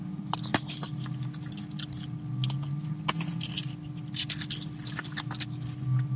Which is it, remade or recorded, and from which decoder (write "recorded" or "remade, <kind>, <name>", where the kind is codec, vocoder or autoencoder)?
recorded